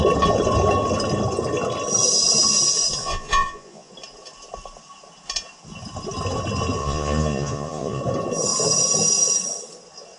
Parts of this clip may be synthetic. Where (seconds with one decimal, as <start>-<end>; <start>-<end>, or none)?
3.0-3.9; 6.8-8.0